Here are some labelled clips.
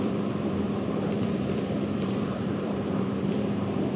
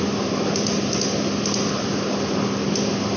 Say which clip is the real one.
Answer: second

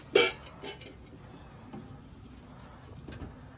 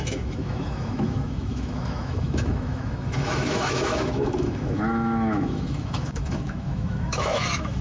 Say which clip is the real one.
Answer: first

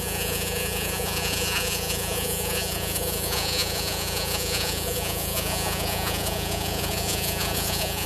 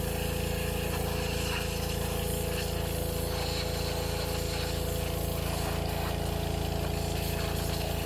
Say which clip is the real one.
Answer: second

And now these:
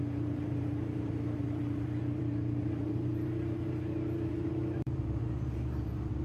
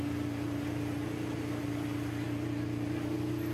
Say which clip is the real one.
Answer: second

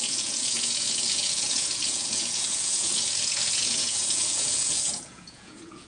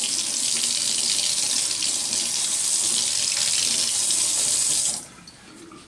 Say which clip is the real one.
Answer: second